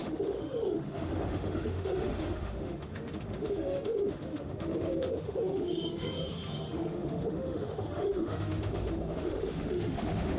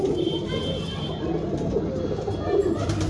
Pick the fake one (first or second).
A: first